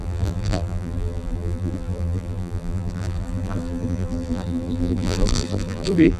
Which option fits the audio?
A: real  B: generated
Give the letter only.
B